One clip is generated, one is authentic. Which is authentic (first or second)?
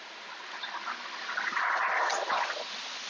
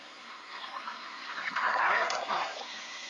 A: first